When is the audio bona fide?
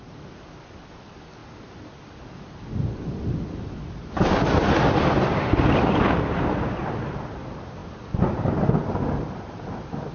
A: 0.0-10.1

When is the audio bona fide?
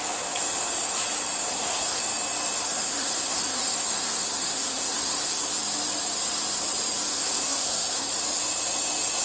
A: 0.0-1.5; 2.0-2.6; 5.5-7.1; 8.1-9.2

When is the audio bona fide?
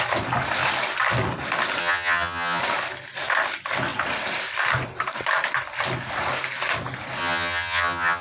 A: 0.0-1.8; 2.6-7.2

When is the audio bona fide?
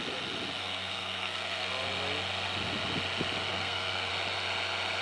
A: 0.0-0.6; 1.7-3.5; 4.1-5.0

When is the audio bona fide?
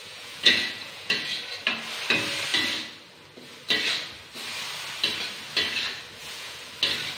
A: 1.4-6.2; 6.7-7.2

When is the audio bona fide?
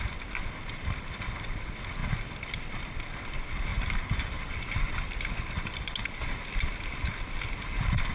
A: 0.0-3.7; 4.5-8.1